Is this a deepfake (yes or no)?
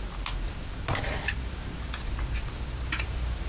no